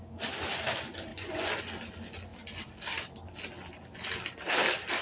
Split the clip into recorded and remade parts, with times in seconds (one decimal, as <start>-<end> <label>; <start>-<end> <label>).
0.0-1.1 recorded; 1.1-1.6 remade; 1.6-5.0 recorded